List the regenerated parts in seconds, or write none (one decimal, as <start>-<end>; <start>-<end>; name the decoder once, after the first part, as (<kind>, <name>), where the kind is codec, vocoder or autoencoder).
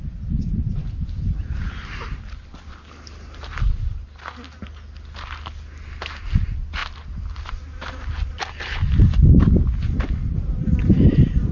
none